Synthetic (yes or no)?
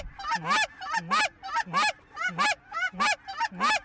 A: no